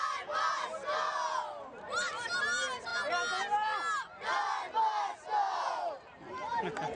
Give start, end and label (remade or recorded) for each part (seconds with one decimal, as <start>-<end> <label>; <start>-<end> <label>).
0.0-6.9 recorded